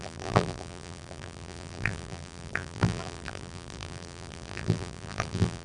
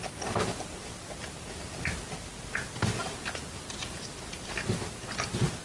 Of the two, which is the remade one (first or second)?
first